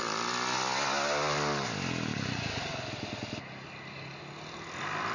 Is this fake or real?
real